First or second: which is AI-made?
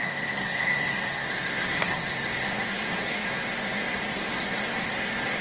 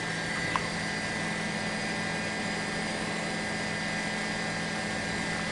first